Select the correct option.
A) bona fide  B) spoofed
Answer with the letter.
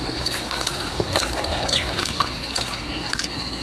B